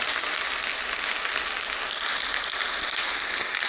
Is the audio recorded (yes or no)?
yes